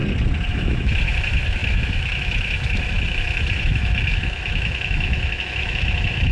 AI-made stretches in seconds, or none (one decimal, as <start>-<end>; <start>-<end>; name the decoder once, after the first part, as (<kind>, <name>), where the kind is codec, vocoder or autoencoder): 0.5-6.3 (autoencoder, DAC-VAE)